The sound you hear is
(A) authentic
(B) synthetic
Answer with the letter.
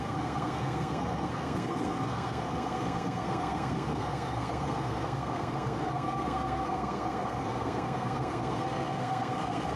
B